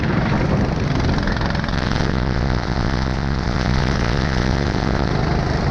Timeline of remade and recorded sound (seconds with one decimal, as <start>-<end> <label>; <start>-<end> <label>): 0.0-1.7 recorded; 1.7-5.1 remade; 5.1-5.7 recorded